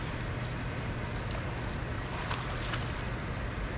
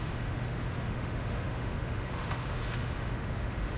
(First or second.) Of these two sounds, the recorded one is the first